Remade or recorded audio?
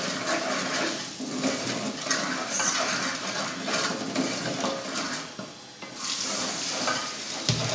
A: recorded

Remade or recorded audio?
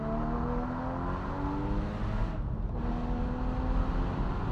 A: recorded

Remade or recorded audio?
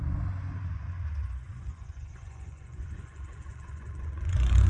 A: remade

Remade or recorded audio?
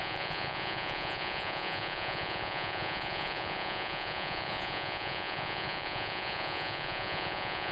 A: remade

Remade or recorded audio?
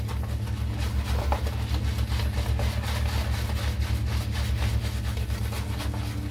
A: recorded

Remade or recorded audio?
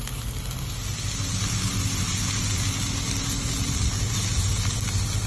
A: recorded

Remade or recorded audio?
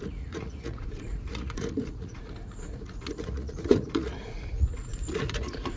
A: remade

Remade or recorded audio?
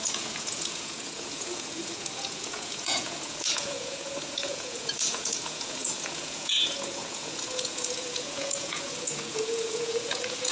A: remade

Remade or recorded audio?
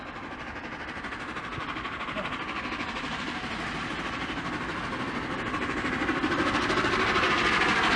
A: recorded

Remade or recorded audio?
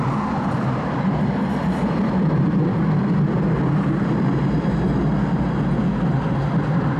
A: recorded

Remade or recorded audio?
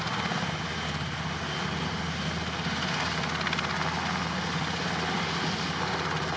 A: recorded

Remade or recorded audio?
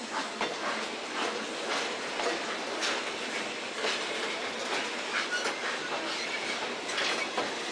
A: recorded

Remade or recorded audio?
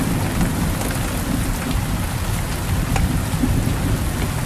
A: recorded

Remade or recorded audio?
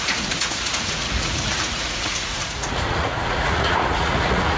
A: remade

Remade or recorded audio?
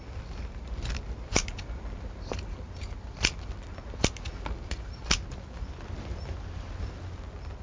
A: recorded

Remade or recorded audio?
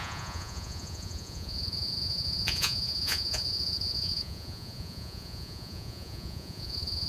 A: remade